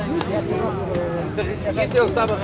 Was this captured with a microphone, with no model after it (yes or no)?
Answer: yes